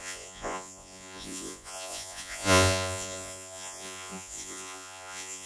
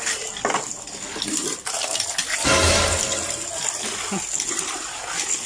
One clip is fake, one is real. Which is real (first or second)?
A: second